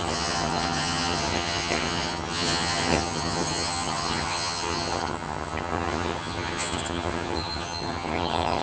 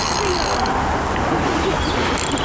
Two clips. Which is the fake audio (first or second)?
first